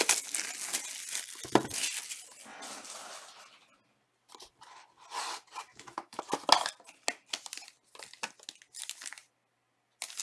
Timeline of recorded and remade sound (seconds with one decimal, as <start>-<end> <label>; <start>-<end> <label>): 0.0-5.7 recorded; 5.7-6.2 remade; 6.2-10.2 recorded

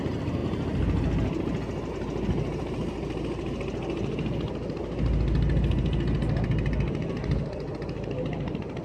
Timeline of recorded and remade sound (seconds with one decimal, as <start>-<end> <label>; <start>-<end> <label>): 0.0-8.8 recorded

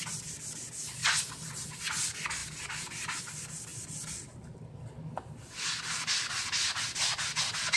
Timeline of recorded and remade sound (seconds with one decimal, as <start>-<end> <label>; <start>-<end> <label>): 0.0-7.8 recorded

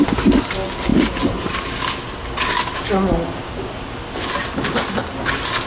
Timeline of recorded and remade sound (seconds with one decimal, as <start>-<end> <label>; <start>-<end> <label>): 0.0-5.7 recorded

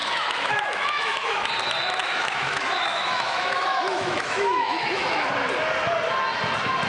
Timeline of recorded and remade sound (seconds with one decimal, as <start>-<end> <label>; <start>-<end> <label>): 0.0-1.5 remade; 1.5-2.0 recorded; 2.0-5.3 remade; 5.3-6.9 recorded

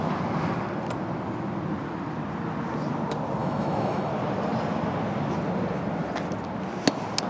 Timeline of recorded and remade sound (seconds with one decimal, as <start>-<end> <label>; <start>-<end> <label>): 0.0-3.4 recorded; 3.4-4.1 remade; 4.1-7.3 recorded

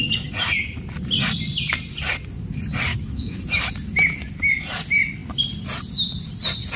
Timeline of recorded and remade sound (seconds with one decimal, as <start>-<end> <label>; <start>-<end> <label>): 0.0-2.9 recorded; 2.9-3.4 remade; 3.4-6.8 recorded